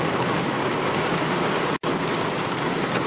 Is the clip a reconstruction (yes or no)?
yes